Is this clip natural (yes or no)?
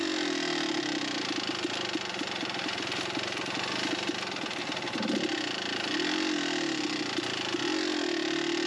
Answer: yes